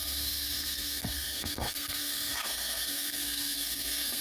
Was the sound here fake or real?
fake